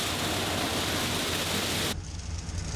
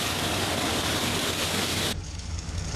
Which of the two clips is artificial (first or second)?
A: second